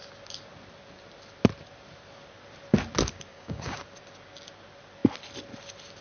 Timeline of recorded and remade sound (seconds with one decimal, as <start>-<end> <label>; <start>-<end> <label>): 0.0-3.3 recorded; 3.3-3.8 remade; 3.8-6.0 recorded